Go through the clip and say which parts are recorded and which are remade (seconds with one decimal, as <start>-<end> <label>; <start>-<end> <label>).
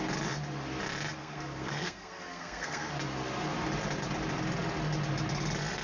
0.0-1.2 recorded; 1.2-2.9 remade; 2.9-5.8 recorded